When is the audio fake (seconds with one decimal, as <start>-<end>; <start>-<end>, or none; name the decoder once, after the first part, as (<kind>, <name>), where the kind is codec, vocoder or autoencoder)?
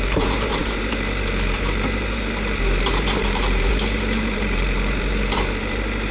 0.0-6.1 (vocoder, BigVGAN v2)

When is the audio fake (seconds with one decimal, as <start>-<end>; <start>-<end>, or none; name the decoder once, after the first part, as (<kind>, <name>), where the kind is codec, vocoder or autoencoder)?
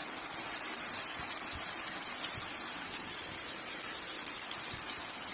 0.0-5.3 (vocoder, BigVGAN v2)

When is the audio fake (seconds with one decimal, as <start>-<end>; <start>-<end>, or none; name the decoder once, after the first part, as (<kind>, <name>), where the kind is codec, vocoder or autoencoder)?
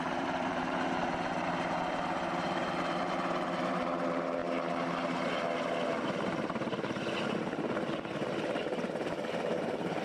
0.0-4.4 (vocoder, BigVGAN v2); 9.3-10.0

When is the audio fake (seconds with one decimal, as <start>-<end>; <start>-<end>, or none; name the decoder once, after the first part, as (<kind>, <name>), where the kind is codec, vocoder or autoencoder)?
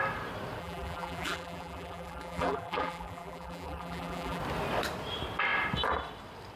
0.6-4.4 (vocoder, BigVGAN v2)